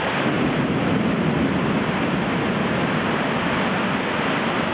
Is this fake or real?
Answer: real